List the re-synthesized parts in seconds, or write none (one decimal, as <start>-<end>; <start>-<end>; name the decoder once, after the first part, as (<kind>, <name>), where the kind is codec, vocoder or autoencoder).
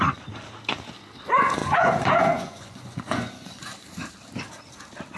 1.6-3.6 (vocoder, Vocos)